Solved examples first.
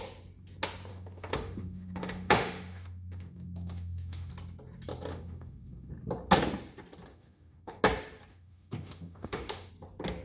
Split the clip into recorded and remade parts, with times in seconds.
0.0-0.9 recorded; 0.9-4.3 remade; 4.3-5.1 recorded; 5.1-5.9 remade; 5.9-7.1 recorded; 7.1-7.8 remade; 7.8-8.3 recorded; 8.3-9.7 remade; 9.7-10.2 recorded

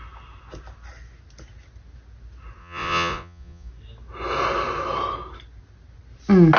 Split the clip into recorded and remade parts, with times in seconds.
0.0-2.6 recorded; 2.6-3.7 remade; 3.7-6.6 recorded

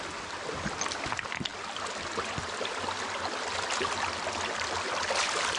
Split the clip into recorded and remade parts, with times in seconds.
0.0-5.6 recorded

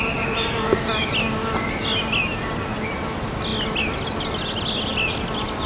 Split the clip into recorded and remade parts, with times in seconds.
0.0-5.7 recorded

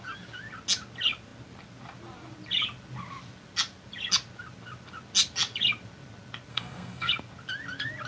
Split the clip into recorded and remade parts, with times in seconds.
0.0-6.5 recorded; 6.5-7.1 remade; 7.1-8.1 recorded